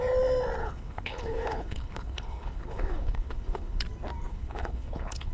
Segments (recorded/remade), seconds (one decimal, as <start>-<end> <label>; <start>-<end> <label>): 0.0-0.6 recorded; 0.6-3.8 remade; 3.8-4.3 recorded; 4.3-5.3 remade